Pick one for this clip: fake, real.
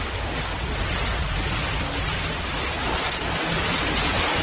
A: real